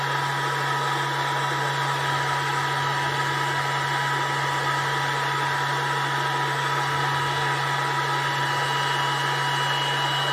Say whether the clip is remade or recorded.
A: recorded